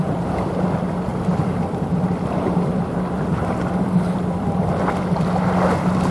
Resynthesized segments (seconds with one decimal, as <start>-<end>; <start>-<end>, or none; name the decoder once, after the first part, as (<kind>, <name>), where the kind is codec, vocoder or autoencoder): 1.1-4.8 (vocoder, BigVGAN v2)